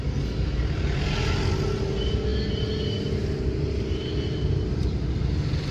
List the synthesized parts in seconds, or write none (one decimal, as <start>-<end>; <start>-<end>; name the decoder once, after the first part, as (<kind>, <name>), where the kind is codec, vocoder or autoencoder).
none